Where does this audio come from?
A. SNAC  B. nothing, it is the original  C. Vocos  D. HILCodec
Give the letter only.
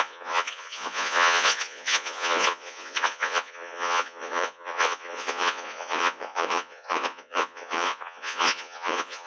C